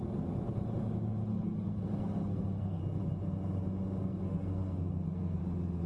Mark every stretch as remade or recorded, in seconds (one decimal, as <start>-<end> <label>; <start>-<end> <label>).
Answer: 0.0-1.3 recorded; 1.3-2.8 remade; 2.8-4.0 recorded; 4.0-5.4 remade; 5.4-5.9 recorded